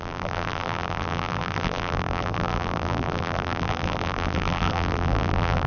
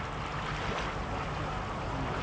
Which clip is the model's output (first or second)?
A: first